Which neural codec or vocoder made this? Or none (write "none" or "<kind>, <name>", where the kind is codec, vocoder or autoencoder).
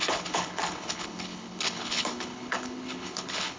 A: codec, HILCodec